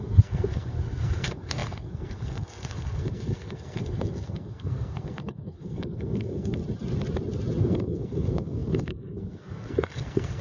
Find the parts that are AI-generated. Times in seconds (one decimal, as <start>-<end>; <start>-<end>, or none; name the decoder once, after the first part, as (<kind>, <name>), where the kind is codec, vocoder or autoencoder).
0.0-6.6 (codec, SNAC); 7.6-10.4